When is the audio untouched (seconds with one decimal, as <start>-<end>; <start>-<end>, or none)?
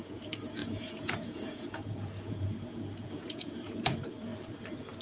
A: 4.3-5.0